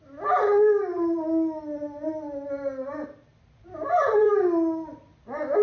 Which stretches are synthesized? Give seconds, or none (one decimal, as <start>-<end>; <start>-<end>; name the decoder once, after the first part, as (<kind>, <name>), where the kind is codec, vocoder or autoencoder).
3.3-4.3 (vocoder, BigVGAN v2)